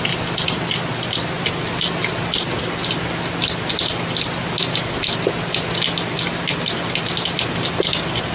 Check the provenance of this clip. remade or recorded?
recorded